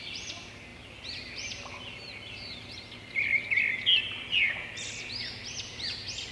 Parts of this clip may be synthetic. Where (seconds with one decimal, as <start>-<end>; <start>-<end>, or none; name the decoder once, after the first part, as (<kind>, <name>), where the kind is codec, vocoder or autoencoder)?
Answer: none